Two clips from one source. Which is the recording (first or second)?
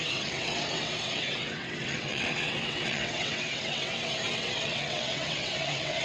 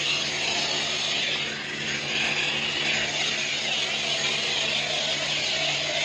second